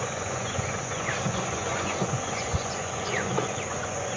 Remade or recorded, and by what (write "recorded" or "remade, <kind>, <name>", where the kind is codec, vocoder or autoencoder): remade, vocoder, Vocos